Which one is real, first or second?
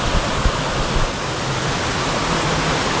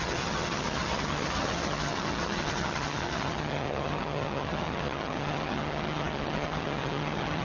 first